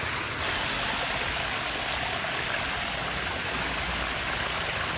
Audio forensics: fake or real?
real